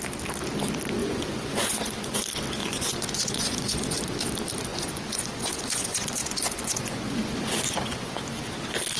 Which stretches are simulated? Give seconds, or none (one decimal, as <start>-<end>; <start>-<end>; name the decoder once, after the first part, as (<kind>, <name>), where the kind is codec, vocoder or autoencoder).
1.0-2.2 (vocoder, Vocos); 2.6-4.0; 4.7-8.2